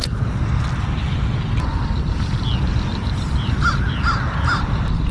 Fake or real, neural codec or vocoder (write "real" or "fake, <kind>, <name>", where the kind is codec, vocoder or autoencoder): real